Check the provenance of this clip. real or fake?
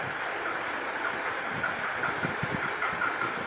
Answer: real